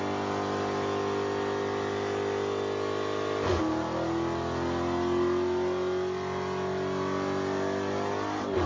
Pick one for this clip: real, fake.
real